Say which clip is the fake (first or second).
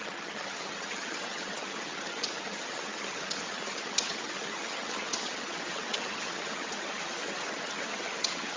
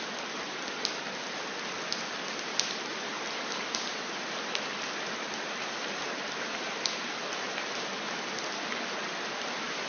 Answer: first